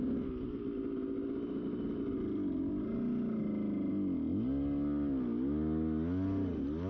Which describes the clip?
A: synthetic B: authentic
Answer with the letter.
B